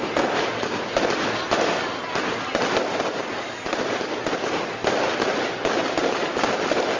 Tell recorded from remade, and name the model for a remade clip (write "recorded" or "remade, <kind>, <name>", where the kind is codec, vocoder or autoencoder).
recorded